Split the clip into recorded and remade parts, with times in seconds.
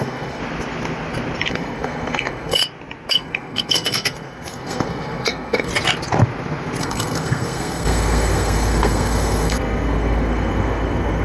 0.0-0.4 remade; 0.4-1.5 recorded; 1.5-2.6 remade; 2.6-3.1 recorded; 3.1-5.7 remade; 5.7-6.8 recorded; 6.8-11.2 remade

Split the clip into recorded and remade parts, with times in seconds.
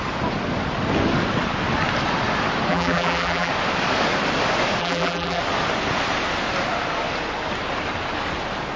0.0-2.7 recorded; 2.7-3.5 remade; 3.5-4.8 recorded; 4.8-5.4 remade; 5.4-8.8 recorded